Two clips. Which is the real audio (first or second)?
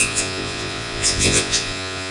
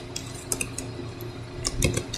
second